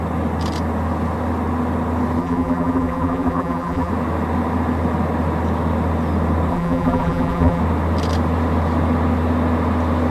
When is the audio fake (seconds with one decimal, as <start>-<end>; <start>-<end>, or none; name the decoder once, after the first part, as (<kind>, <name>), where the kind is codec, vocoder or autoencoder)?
2.2-3.9 (vocoder, BigVGAN v2); 6.5-7.6